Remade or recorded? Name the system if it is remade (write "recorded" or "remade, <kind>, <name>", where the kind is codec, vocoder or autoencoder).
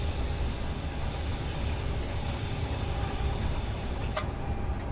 recorded